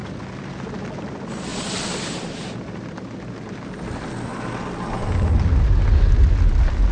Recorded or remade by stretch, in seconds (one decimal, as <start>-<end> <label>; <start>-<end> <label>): 0.0-6.9 recorded